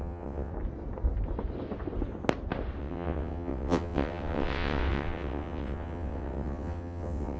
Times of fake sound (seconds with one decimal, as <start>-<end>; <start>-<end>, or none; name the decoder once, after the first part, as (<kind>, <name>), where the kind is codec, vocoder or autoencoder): 0.0-0.5 (vocoder, WaveNeXt); 2.8-7.4